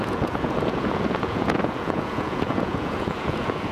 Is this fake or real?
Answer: fake